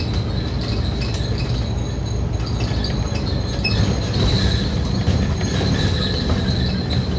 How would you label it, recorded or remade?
recorded